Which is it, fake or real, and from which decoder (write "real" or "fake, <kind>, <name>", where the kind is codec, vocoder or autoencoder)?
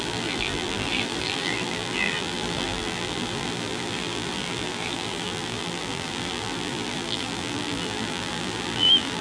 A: fake, vocoder, BigVGAN v2